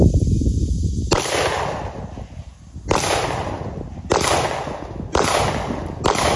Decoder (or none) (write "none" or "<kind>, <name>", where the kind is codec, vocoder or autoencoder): none